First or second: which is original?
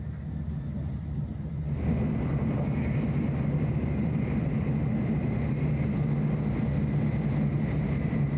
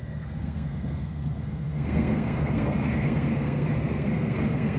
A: first